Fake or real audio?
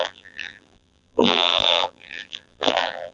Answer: fake